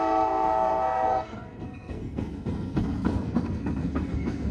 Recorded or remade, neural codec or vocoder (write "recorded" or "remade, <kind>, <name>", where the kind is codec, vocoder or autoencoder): remade, codec, SNAC